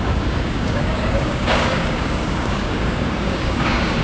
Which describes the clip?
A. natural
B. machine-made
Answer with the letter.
B